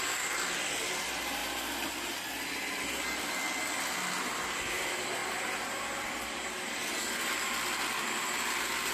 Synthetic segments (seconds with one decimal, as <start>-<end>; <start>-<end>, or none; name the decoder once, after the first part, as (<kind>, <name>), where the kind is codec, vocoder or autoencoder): none